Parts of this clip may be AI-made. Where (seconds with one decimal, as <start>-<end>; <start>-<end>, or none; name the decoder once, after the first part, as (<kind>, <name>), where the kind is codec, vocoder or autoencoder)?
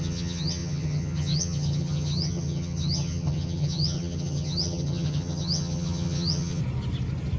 0.0-6.6 (vocoder, HiFi-GAN)